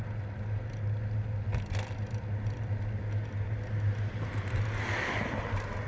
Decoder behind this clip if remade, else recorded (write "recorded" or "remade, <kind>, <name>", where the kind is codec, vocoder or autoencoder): recorded